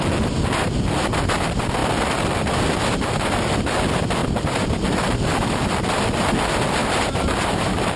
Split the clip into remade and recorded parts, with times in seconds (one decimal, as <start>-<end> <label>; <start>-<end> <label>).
0.0-6.8 recorded; 6.8-8.0 remade